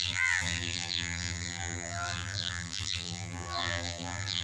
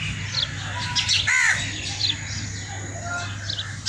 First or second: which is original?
second